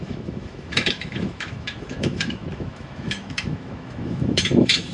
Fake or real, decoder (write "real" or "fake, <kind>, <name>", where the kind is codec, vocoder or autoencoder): fake, autoencoder, DAC-VAE